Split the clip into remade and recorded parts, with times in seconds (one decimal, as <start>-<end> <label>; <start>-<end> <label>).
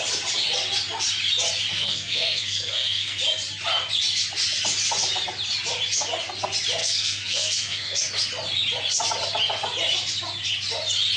0.0-1.7 recorded; 1.7-3.2 remade; 3.2-6.8 recorded; 6.8-8.0 remade; 8.0-11.2 recorded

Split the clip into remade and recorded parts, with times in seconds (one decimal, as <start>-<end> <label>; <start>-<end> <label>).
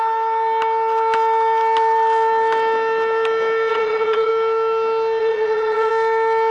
0.0-3.7 recorded; 3.7-4.3 remade; 4.3-5.2 recorded; 5.2-5.9 remade; 5.9-6.5 recorded